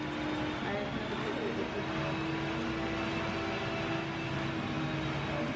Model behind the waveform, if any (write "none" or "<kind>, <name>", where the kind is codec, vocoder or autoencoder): none